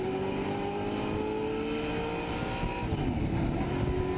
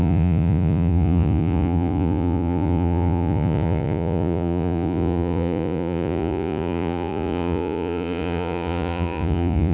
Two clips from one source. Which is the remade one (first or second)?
second